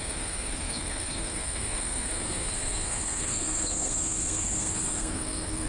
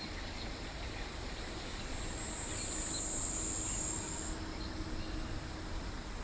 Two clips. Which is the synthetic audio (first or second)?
first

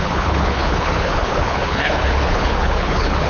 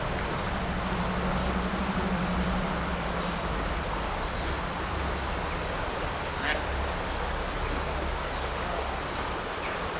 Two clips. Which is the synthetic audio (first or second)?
first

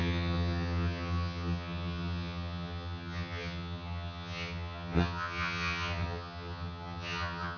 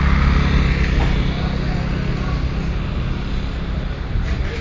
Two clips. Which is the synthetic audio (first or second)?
first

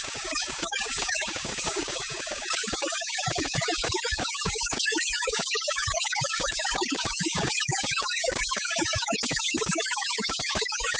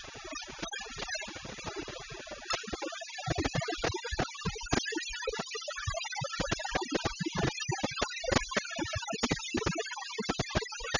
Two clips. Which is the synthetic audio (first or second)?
first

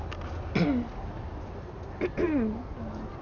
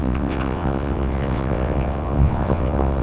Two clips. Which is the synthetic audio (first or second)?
second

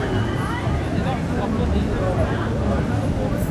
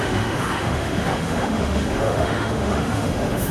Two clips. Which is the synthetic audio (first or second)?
second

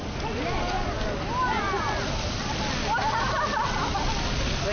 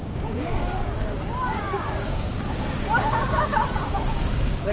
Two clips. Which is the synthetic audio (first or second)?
second